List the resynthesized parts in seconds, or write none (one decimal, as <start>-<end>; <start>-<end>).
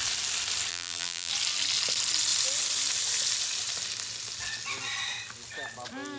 0.7-1.3